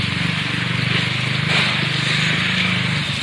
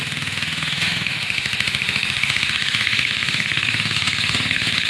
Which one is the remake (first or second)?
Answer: second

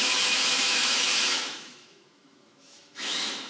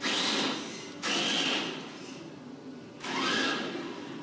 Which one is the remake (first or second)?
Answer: first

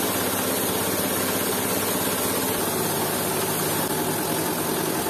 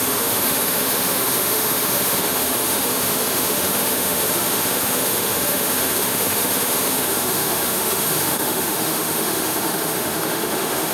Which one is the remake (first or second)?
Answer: second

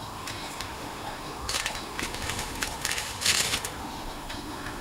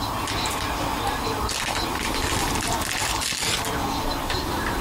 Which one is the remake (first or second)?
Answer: first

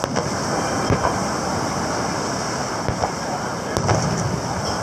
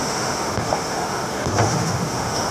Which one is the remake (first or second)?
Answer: second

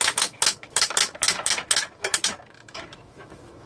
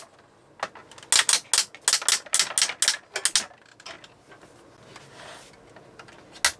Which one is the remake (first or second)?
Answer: first